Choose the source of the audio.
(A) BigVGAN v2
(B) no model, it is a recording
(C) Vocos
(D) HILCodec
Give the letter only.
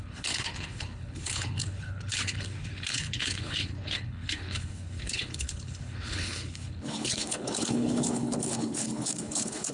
D